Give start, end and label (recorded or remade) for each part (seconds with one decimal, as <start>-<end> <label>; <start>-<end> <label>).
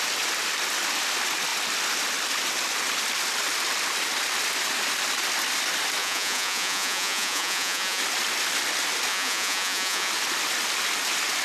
0.0-6.0 recorded; 6.0-8.0 remade; 8.0-9.1 recorded; 9.1-10.1 remade; 10.1-11.4 recorded